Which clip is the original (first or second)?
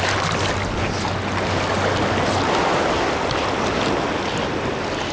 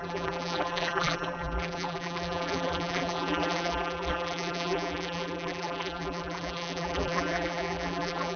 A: first